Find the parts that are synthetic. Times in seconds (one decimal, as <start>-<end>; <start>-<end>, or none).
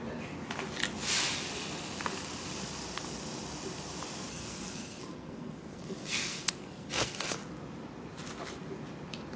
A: 4.3-7.4